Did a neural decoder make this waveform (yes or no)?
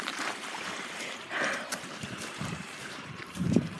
yes